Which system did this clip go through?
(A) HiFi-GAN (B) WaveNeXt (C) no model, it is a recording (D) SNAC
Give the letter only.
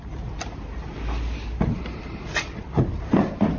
C